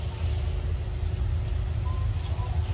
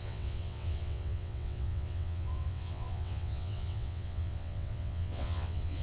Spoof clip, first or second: second